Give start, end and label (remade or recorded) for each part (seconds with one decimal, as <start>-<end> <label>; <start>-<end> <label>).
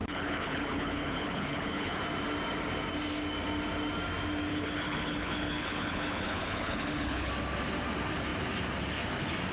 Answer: 0.0-2.0 remade; 2.0-4.5 recorded; 4.5-7.3 remade; 7.3-9.5 recorded